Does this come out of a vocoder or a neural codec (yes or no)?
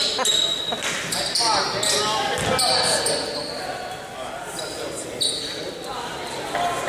no